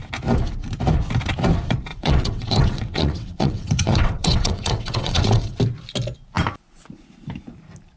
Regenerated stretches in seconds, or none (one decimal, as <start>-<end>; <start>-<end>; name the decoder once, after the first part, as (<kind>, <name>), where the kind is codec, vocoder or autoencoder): 1.9-5.6 (vocoder, WaveNeXt)